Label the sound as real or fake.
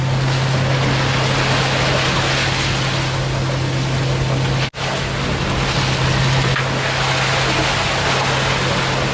real